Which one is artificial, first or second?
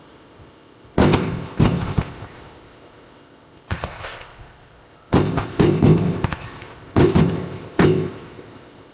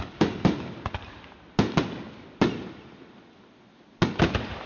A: first